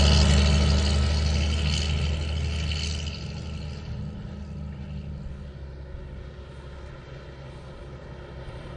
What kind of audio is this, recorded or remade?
recorded